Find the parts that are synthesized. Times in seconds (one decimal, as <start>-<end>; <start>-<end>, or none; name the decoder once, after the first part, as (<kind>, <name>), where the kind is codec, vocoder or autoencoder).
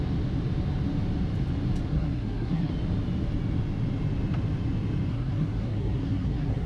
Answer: 1.9-2.7 (codec, SNAC); 5.1-6.7